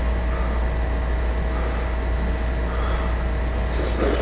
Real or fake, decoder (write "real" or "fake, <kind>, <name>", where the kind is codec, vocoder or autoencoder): real